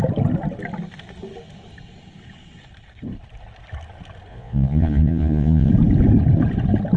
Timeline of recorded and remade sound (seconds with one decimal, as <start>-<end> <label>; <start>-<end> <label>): 0.0-4.3 recorded; 4.3-5.7 remade; 5.7-7.0 recorded